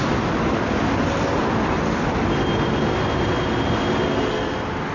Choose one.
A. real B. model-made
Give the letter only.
A